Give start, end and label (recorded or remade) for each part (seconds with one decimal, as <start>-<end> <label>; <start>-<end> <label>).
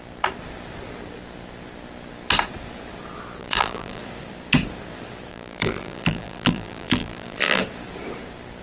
0.0-3.4 recorded; 3.4-4.0 remade; 4.0-5.3 recorded; 5.3-7.6 remade; 7.6-8.6 recorded